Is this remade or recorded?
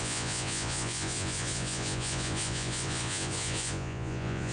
remade